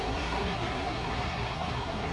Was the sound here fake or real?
fake